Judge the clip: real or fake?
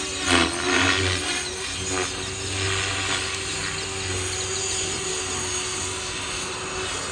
real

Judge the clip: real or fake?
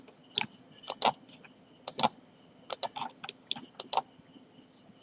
real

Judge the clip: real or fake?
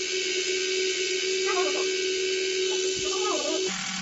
real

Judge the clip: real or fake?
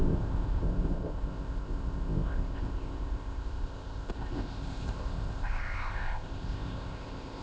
fake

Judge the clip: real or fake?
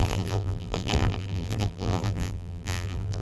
fake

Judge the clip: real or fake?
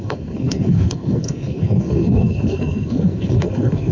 fake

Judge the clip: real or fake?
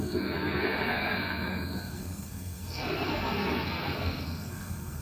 fake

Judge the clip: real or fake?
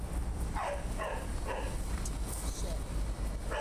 real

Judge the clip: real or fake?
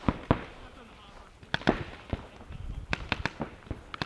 real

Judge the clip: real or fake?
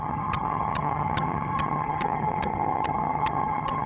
fake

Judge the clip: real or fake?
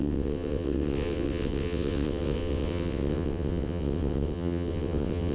fake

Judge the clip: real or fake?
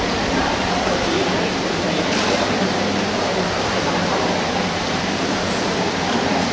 fake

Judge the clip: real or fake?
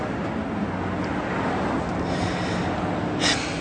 real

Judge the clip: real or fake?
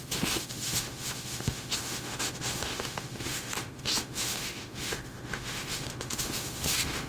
fake